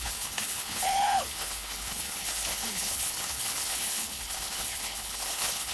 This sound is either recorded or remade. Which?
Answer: remade